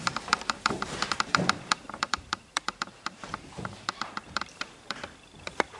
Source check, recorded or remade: remade